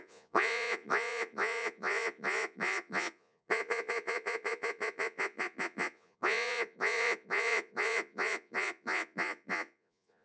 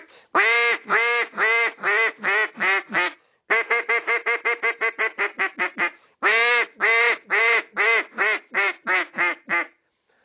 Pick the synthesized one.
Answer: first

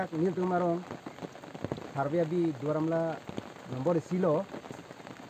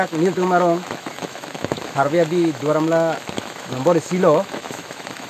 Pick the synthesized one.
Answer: second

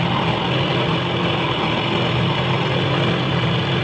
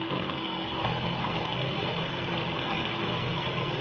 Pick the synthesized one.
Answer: second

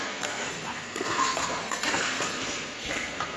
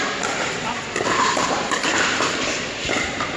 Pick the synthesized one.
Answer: first